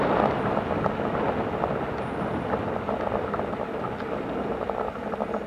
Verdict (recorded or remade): recorded